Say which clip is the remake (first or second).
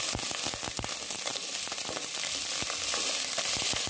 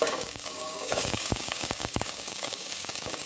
second